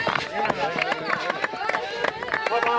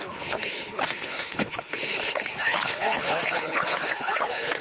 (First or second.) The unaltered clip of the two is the first